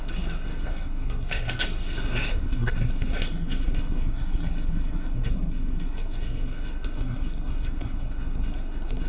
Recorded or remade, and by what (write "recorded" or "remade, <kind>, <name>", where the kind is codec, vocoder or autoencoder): remade, codec, SNAC